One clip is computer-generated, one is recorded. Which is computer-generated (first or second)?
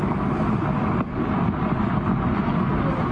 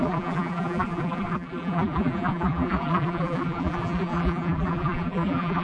second